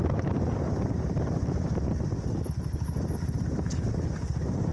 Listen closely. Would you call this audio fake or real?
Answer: fake